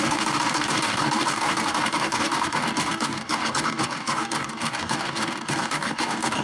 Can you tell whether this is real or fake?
fake